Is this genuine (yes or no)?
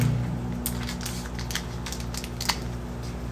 yes